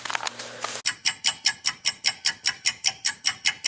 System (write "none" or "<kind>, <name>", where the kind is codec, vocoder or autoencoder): none